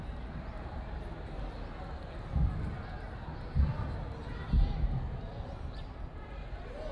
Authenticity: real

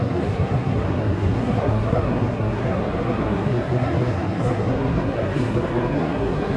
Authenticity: fake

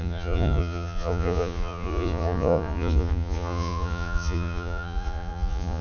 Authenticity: fake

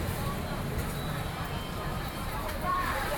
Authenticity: fake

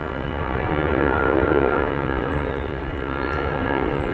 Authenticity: fake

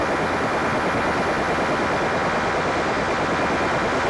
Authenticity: real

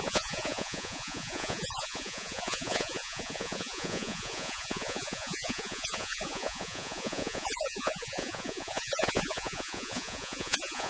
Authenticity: fake